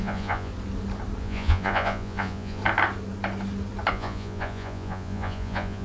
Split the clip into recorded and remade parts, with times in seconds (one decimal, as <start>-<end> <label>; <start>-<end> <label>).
0.0-0.5 remade; 0.5-1.2 recorded; 1.2-2.6 remade; 2.6-3.9 recorded; 3.9-5.8 remade